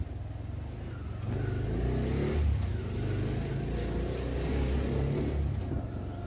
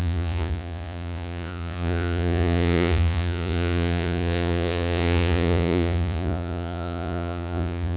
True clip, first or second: first